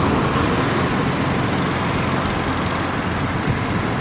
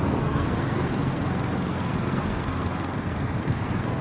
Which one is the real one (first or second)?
first